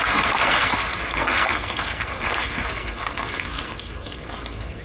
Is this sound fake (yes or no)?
yes